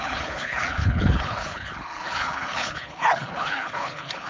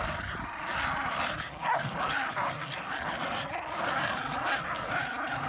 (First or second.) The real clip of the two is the second